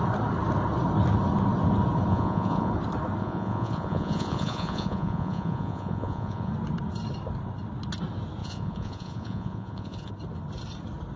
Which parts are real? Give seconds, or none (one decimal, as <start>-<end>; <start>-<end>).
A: 0.0-2.1; 2.7-3.2; 6.5-8.4; 10.1-11.2